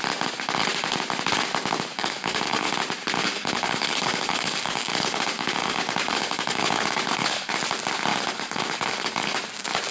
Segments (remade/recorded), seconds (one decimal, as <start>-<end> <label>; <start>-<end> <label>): 0.0-2.0 recorded; 2.0-2.7 remade; 2.7-3.2 recorded; 3.2-7.5 remade; 7.5-8.1 recorded; 8.1-9.4 remade; 9.4-9.9 recorded